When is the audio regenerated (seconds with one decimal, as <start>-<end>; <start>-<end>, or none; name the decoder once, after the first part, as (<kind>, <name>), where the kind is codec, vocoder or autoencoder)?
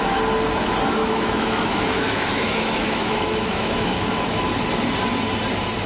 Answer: 1.0-4.5 (autoencoder, DAC-VAE)